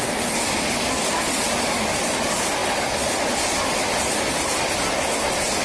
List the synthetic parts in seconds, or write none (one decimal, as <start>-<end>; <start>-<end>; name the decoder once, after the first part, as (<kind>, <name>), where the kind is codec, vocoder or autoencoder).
none